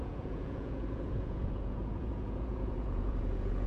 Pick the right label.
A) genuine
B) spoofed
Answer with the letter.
B